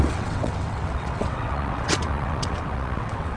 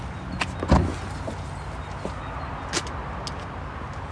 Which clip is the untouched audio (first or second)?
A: second